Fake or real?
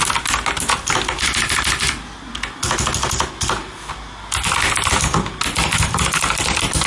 real